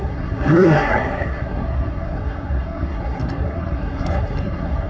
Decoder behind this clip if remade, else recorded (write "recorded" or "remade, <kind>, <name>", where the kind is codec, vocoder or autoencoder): remade, codec, SNAC